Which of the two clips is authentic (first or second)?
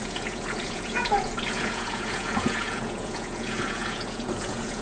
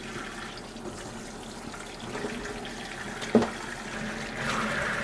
second